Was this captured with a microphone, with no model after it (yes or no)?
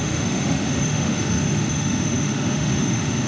no